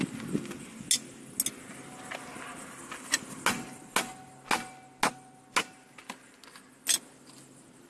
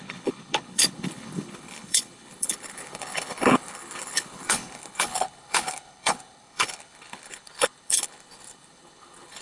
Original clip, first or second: first